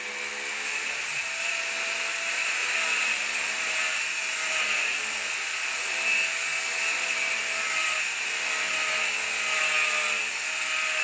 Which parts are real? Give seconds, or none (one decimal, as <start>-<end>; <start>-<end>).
0.0-0.7; 1.6-11.0